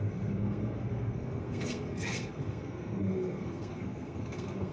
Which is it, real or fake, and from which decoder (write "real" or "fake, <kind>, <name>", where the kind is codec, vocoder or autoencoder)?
fake, codec, SNAC